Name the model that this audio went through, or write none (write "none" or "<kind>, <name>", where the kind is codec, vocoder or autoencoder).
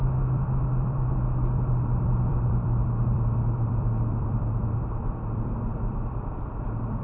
vocoder, BigVGAN v2